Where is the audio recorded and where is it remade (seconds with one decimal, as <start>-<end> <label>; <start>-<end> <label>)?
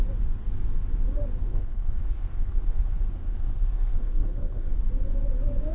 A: 0.0-1.4 recorded; 1.4-4.8 remade; 4.8-5.7 recorded